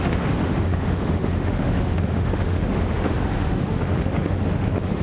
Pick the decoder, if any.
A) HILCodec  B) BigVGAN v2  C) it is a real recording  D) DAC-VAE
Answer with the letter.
D